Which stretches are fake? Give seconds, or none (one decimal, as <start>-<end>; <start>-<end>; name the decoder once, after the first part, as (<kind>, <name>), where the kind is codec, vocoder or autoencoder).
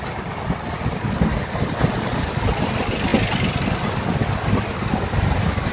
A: none